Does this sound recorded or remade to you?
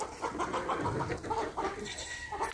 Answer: recorded